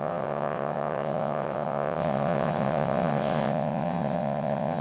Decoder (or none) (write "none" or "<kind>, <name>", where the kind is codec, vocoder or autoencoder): vocoder, WaveNeXt